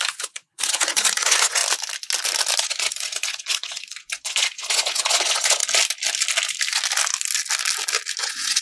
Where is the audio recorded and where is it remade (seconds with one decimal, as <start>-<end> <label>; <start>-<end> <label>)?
0.0-1.6 remade; 1.6-2.6 recorded; 2.6-5.6 remade; 5.6-8.2 recorded; 8.2-8.6 remade